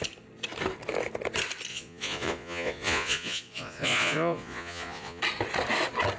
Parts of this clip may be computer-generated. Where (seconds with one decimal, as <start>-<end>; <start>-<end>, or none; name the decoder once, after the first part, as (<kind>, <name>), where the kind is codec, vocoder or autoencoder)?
1.7-5.2 (vocoder, Vocos)

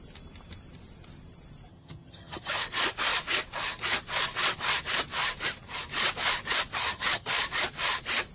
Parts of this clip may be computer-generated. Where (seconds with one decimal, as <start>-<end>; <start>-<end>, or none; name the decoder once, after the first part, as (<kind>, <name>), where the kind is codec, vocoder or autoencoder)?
1.7-2.5 (vocoder, HiFi-GAN); 6.8-7.3